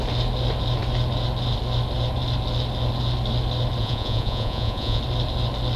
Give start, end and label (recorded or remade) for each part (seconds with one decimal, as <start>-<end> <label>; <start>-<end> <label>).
0.0-3.8 recorded; 3.8-5.0 remade; 5.0-5.8 recorded